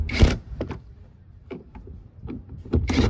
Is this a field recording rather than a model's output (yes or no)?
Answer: no